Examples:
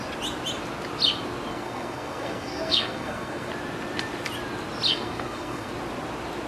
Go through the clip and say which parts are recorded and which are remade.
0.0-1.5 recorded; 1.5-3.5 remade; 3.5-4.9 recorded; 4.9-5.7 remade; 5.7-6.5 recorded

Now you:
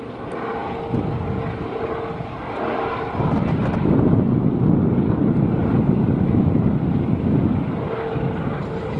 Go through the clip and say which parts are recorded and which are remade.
0.0-2.9 recorded; 2.9-4.1 remade; 4.1-5.6 recorded; 5.6-6.7 remade; 6.7-9.0 recorded

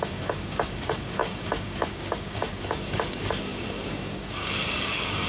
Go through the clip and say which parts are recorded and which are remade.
0.0-5.3 remade

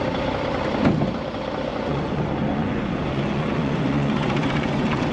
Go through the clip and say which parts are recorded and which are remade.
0.0-1.7 recorded; 1.7-5.1 remade